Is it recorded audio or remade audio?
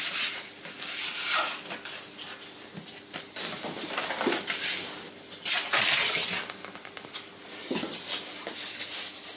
recorded